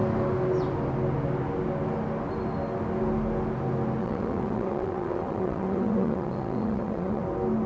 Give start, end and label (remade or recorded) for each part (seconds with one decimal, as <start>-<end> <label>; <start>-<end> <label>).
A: 0.0-4.0 recorded; 4.0-7.2 remade; 7.2-7.7 recorded